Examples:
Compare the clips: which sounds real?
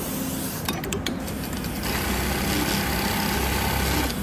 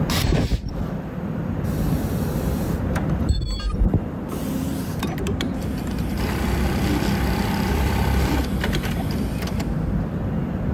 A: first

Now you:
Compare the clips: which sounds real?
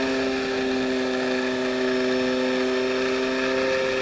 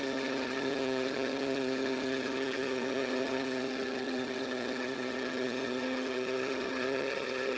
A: first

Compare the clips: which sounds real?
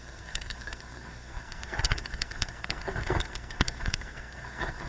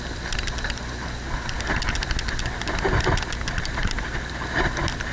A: second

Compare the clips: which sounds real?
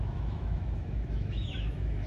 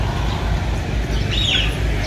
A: second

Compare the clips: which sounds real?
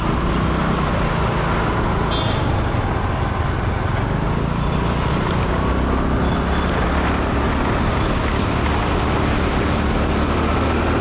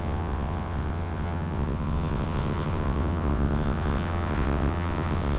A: first